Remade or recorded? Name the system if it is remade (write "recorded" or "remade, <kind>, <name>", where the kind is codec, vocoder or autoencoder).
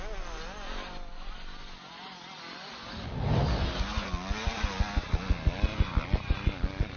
recorded